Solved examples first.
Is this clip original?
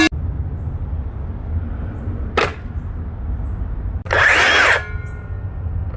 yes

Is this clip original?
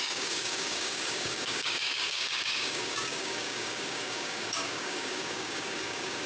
no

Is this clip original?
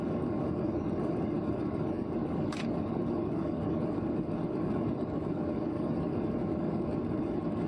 no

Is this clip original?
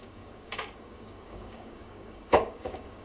no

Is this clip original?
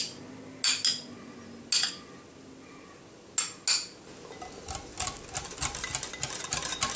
yes